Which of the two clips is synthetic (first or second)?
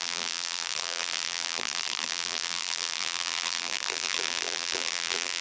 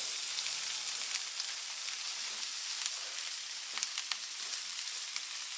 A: first